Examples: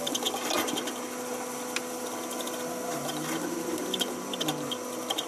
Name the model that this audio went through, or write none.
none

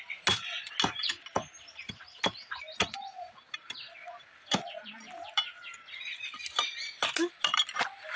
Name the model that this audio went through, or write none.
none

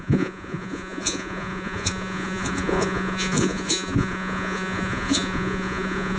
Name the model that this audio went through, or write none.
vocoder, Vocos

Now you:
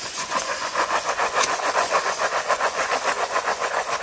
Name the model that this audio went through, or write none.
vocoder, Vocos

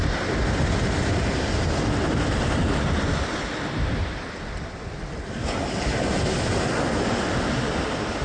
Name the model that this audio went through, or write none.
none